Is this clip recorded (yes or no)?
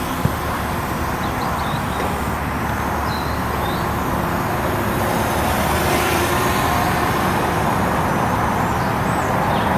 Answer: yes